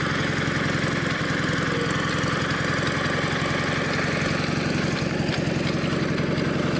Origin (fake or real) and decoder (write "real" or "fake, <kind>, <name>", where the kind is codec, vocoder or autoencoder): real